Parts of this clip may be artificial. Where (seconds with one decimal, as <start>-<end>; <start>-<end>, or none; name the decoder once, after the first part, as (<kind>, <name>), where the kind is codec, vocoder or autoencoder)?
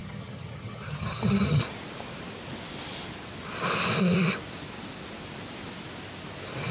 0.0-1.6 (vocoder, HiFi-GAN)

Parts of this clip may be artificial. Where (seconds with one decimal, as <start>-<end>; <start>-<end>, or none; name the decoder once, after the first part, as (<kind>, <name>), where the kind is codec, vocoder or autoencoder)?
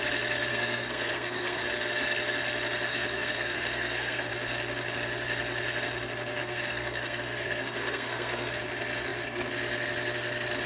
0.5-1.6 (codec, SNAC); 2.9-4.3; 6.4-8.6